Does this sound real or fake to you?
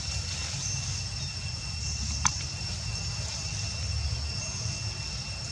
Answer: real